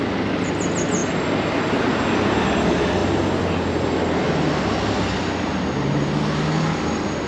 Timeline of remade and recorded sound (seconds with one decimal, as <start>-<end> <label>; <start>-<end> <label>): 0.0-7.3 recorded